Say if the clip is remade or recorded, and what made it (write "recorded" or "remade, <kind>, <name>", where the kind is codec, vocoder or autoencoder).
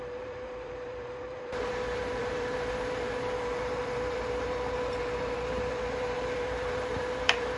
remade, vocoder, BigVGAN v2